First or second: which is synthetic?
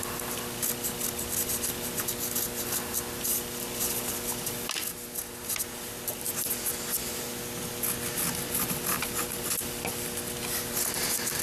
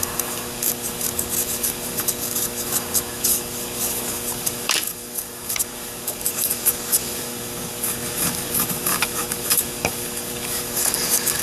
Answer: second